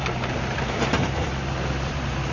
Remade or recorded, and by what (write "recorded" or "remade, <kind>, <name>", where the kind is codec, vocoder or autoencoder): remade, vocoder, BigVGAN v2